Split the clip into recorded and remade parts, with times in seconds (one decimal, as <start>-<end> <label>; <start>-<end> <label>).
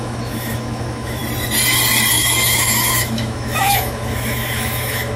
0.0-1.2 remade; 1.2-2.1 recorded; 2.1-5.2 remade